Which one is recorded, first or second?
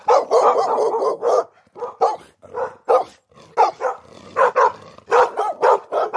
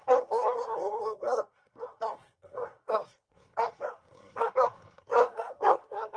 first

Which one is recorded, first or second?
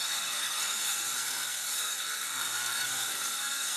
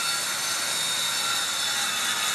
second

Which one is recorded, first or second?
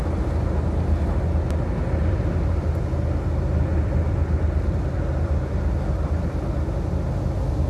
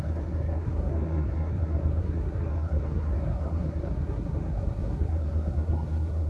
first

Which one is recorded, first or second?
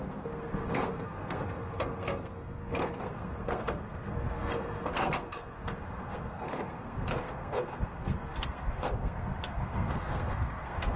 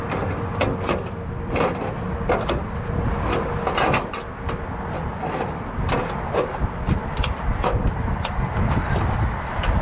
second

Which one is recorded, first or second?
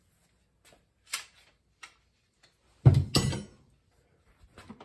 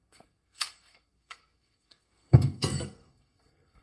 first